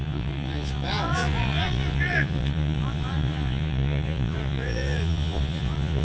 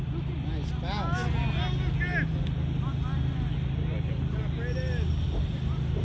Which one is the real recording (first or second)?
second